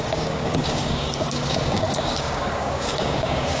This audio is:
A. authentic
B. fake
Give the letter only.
B